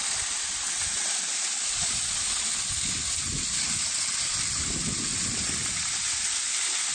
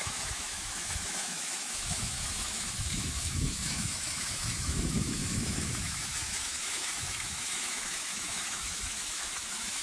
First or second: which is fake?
second